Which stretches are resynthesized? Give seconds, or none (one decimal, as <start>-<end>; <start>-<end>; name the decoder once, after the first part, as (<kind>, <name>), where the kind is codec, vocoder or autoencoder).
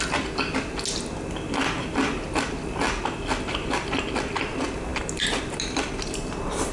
none